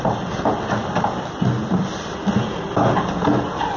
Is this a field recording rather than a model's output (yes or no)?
yes